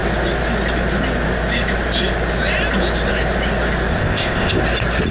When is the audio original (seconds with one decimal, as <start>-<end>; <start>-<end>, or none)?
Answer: 0.0-3.9; 4.6-5.1